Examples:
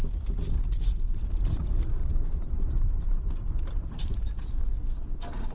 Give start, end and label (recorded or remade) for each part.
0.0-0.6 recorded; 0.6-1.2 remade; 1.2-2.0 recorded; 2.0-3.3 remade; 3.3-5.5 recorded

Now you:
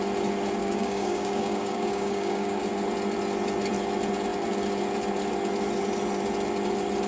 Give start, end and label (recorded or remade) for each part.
0.0-0.6 recorded; 0.6-2.6 remade; 2.6-7.1 recorded

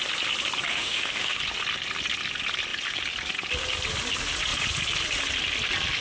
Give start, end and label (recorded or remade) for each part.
0.0-0.7 recorded; 0.7-1.4 remade; 1.4-6.0 recorded

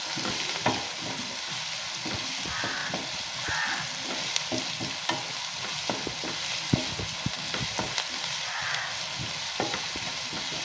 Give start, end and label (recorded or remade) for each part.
0.0-10.6 recorded